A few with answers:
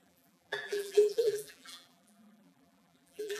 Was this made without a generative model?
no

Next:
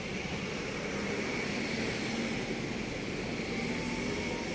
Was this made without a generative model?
no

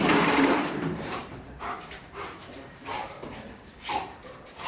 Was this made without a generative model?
no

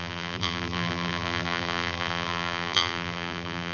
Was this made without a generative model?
no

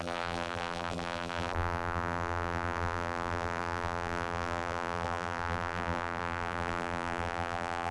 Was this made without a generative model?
no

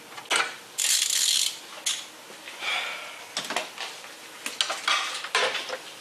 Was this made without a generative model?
yes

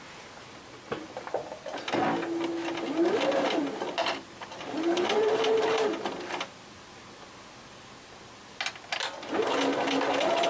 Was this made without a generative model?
yes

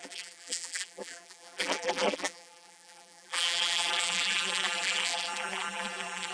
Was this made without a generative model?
no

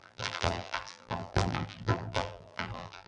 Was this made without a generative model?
no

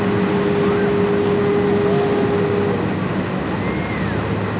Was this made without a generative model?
yes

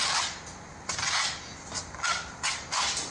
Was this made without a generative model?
yes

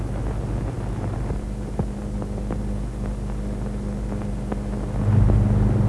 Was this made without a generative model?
yes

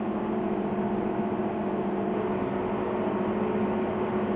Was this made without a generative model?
yes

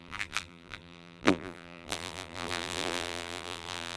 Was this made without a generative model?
no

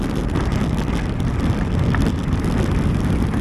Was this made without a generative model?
yes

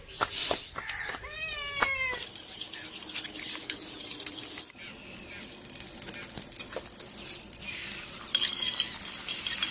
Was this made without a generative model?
yes